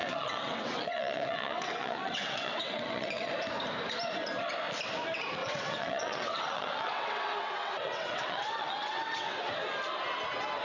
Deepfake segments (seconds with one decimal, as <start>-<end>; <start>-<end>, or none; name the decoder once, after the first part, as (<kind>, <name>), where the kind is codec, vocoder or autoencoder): 0.0-3.3 (vocoder, WaveNeXt); 5.4-9.4